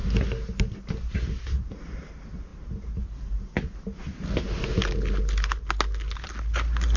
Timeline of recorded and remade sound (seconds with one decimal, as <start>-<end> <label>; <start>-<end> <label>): 0.0-7.0 recorded